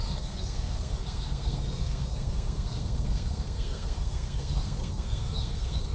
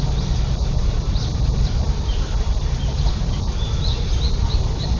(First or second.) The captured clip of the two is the second